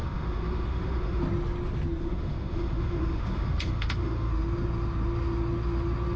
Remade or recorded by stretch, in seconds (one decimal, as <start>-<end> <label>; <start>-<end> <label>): 0.0-1.2 remade; 1.2-2.0 recorded; 2.0-4.3 remade; 4.3-6.2 recorded

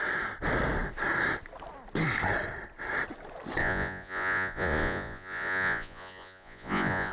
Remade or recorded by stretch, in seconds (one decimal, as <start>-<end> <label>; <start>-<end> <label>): 0.0-3.6 recorded; 3.6-7.1 remade

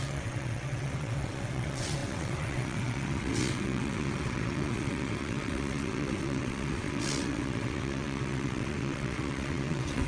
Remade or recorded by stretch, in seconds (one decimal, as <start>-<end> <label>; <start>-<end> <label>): 0.0-10.1 remade

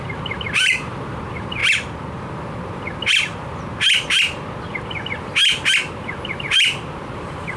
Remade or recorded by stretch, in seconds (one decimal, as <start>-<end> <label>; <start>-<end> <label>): 0.0-1.6 remade; 1.6-6.0 recorded; 6.0-7.6 remade

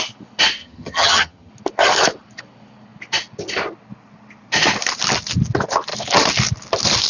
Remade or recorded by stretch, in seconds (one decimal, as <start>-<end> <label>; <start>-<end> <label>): 0.0-0.6 recorded; 0.6-1.5 remade; 1.5-7.1 recorded

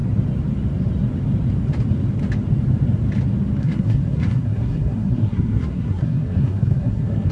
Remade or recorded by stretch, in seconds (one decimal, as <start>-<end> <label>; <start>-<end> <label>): 0.0-3.6 recorded; 3.6-7.3 remade